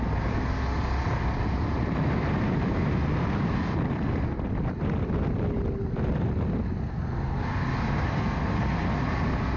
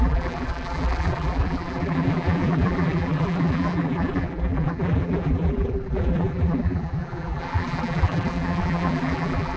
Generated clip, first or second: second